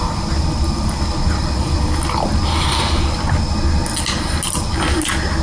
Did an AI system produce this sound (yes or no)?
no